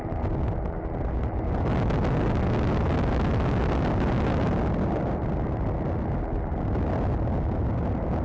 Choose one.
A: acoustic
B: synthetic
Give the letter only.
A